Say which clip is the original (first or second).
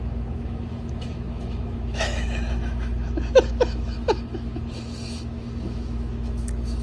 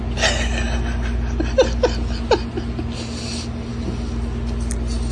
second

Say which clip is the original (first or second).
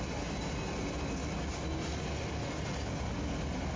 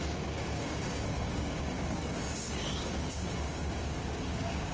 first